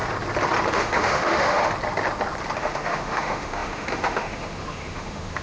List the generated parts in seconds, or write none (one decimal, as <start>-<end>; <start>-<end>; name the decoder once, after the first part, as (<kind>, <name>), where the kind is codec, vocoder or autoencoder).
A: 0.7-1.7 (autoencoder, DAC-VAE); 2.6-5.4